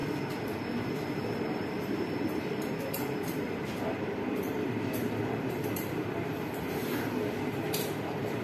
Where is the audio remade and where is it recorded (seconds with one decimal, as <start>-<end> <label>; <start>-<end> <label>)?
0.0-0.8 recorded; 0.8-8.4 remade